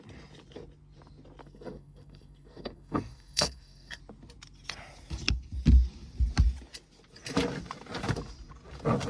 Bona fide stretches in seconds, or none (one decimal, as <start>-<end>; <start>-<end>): 0.0-1.4; 4.0-9.1